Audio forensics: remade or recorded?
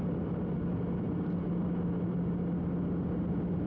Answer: recorded